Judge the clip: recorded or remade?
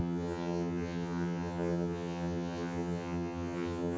remade